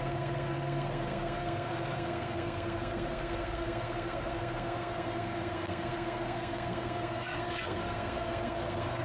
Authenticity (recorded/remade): remade